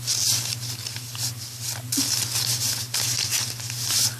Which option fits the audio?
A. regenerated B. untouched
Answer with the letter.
B